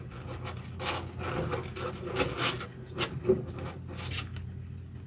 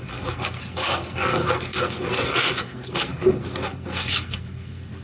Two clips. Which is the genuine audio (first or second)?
first